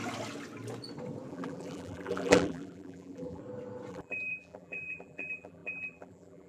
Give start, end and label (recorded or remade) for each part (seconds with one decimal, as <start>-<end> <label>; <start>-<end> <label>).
0.0-1.3 recorded; 1.3-3.4 remade; 3.4-3.9 recorded; 3.9-6.5 remade